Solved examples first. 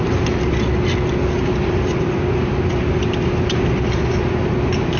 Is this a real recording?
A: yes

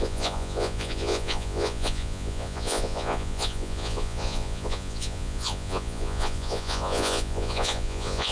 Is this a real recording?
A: no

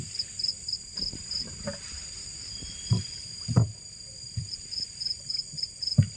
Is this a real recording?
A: no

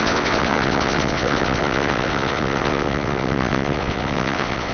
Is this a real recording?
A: no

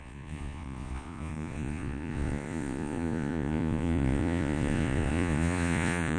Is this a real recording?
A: no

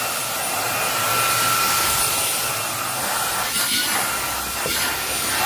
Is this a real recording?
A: yes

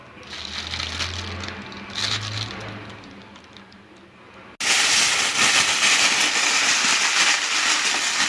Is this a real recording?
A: yes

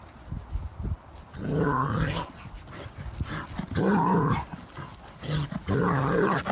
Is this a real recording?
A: yes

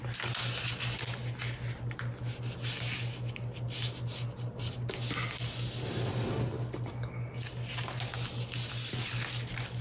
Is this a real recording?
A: yes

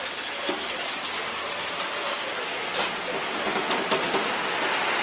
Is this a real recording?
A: yes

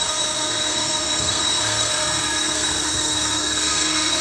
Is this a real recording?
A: no